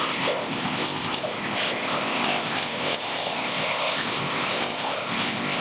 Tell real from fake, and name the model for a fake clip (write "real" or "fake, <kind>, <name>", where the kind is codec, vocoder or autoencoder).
fake, codec, ZipCodec